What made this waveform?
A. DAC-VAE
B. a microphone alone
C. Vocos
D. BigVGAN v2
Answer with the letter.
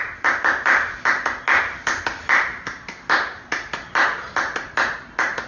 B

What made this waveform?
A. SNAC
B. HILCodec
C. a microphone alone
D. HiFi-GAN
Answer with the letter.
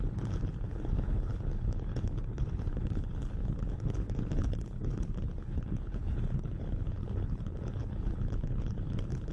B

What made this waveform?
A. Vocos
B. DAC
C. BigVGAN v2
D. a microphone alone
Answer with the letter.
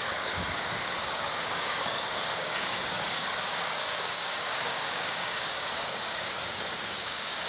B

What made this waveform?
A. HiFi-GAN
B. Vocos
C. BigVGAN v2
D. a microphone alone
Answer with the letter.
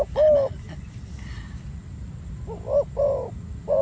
D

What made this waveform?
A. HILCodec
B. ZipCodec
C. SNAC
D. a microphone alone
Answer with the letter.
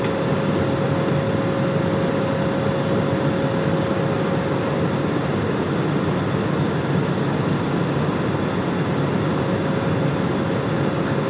D